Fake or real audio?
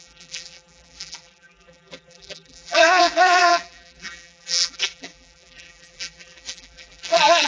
fake